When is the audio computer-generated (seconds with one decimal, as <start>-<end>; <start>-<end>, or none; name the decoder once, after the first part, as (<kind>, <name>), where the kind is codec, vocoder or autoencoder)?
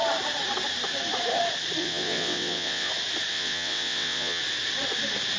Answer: 1.8-2.9 (vocoder, WaveNeXt); 3.3-4.4